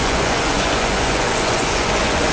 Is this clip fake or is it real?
fake